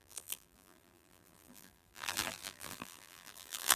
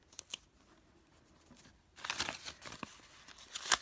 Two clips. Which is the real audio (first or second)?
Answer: second